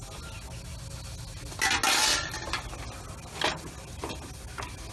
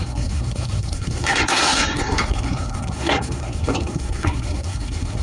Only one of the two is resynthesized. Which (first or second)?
second